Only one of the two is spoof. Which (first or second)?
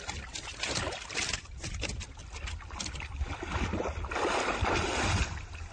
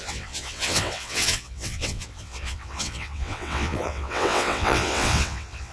second